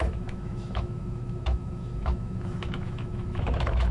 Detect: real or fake fake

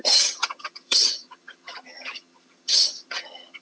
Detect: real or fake fake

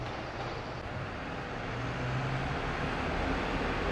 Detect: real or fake real